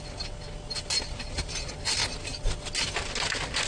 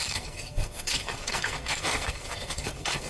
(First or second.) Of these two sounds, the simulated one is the second